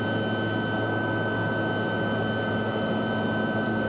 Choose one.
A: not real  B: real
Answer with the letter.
B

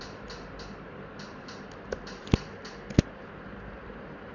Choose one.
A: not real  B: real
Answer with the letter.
B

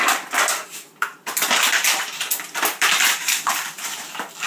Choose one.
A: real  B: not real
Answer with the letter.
B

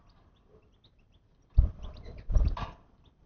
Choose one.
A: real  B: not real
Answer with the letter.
B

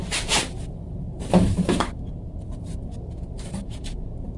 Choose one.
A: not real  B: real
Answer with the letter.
A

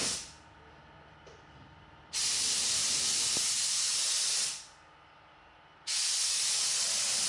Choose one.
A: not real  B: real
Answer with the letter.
B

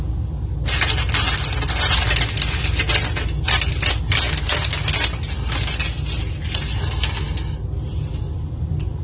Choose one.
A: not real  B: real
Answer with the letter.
B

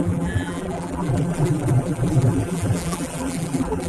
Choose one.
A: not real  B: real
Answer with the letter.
A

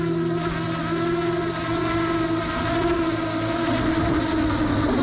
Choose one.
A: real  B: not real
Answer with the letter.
A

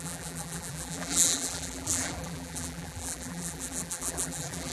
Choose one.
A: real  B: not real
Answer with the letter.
B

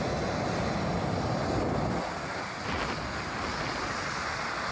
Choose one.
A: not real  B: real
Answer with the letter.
B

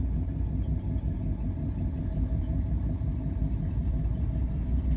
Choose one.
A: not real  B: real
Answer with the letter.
A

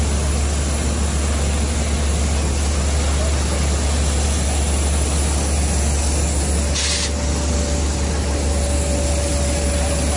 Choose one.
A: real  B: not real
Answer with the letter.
A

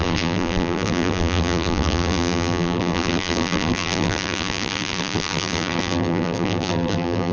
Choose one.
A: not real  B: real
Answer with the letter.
A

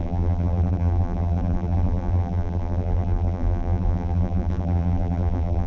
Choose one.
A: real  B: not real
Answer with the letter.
B